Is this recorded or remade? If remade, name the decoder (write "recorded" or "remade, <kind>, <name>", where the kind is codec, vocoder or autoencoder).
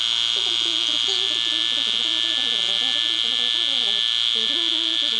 recorded